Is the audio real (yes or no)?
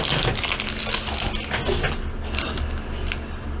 yes